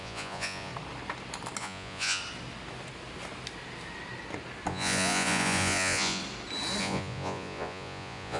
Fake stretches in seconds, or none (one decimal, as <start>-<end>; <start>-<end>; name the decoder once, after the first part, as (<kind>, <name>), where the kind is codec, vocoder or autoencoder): 0.0-0.7 (vocoder, Vocos); 1.6-2.2; 4.7-6.2; 6.8-8.4